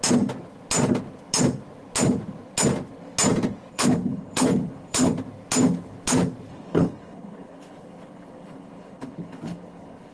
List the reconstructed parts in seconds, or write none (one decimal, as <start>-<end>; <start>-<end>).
3.7-5.1; 6.5-10.1